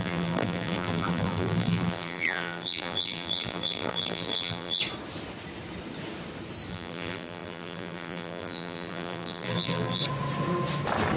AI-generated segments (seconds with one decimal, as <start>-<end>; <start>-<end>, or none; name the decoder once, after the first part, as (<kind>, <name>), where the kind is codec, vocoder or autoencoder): 0.0-4.8 (vocoder, BigVGAN v2); 6.7-10.0